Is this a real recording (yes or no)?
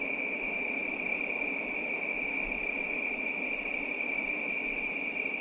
yes